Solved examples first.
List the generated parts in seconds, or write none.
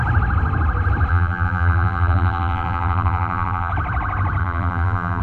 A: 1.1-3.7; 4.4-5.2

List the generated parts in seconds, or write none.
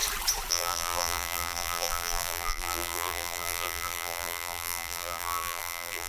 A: 0.5-6.1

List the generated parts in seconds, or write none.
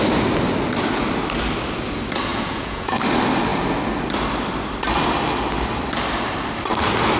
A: 2.3-2.9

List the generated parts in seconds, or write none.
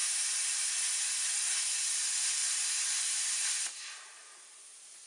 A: 0.0-2.0; 2.4-3.5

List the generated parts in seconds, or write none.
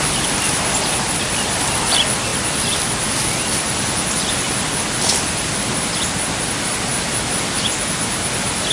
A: none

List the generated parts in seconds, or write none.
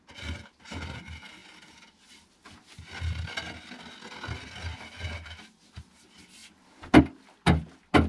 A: none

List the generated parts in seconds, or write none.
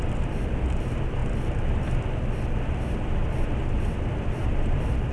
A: 1.2-1.9; 4.4-5.1